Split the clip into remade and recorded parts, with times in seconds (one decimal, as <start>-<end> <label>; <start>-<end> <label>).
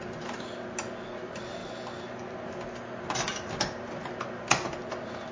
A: 0.0-5.3 recorded